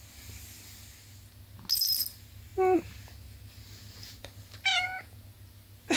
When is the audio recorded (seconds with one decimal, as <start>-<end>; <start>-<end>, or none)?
0.0-4.7; 5.2-6.0